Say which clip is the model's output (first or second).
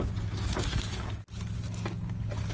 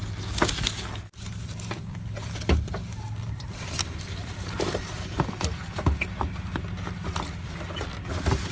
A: second